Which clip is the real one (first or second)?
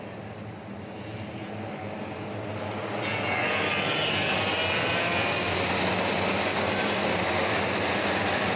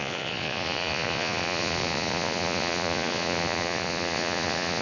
first